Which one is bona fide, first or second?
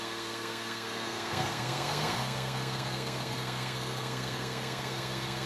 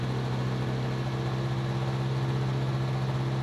second